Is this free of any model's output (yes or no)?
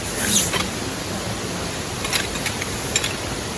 yes